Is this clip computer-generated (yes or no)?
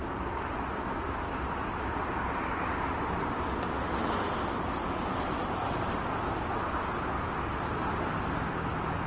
no